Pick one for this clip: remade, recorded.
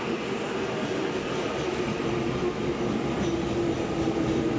recorded